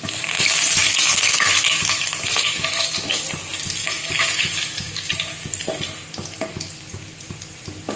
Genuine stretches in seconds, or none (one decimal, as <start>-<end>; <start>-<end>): 0.0-0.8; 3.2-3.8; 5.1-8.0